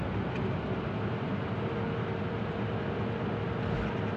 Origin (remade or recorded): recorded